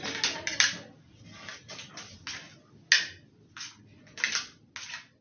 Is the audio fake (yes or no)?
no